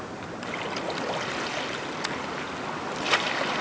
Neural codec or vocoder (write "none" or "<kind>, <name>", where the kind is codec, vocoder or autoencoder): none